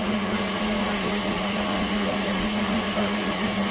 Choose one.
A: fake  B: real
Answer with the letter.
A